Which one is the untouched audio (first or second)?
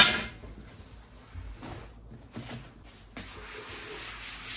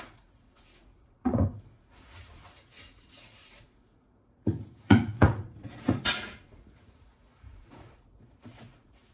first